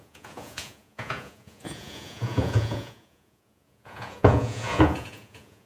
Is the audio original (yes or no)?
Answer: no